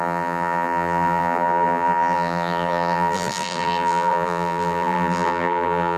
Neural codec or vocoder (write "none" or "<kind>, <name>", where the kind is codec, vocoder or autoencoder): vocoder, BigVGAN v2